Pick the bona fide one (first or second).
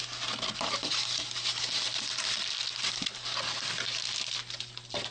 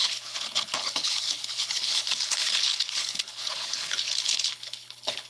first